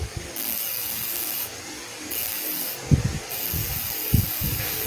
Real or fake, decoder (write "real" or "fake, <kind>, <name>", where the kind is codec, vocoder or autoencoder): fake, codec, DAC